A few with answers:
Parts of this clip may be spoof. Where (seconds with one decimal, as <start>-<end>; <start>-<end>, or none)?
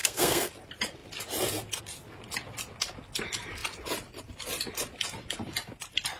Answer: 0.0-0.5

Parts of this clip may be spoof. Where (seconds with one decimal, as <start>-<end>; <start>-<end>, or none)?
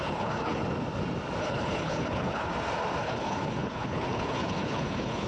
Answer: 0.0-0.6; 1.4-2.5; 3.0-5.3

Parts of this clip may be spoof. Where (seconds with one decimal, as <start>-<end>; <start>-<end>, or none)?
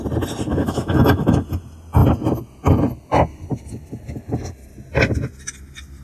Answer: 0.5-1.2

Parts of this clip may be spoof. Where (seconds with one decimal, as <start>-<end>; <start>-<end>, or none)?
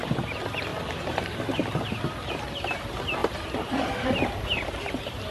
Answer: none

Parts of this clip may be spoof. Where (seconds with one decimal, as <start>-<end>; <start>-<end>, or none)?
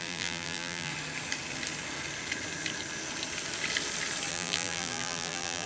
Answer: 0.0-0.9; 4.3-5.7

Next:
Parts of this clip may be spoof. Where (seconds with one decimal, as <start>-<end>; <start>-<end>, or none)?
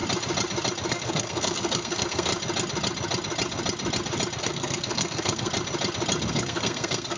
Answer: 0.9-2.3; 4.4-5.5; 6.3-7.2